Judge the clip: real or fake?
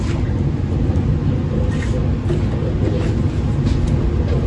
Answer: real